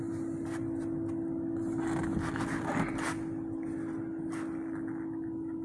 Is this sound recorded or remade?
recorded